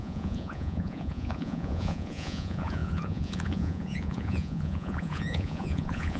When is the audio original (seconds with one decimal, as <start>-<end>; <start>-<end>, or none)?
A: none